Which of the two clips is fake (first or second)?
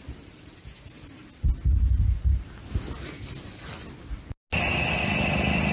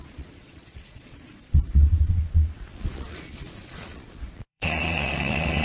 second